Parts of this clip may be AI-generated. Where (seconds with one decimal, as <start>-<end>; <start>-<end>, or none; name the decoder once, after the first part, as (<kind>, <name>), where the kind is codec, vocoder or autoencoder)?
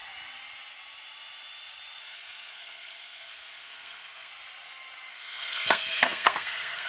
2.0-4.3 (codec, SNAC); 5.1-6.9